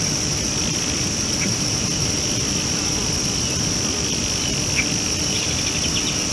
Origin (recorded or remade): recorded